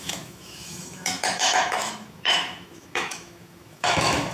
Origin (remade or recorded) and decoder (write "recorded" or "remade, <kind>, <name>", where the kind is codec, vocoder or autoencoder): remade, autoencoder, DAC-VAE